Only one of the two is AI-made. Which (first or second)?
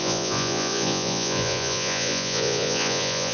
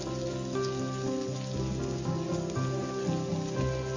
first